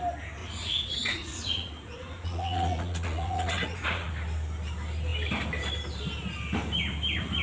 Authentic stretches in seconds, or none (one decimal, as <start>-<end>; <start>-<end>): 0.0-0.4; 4.1-7.4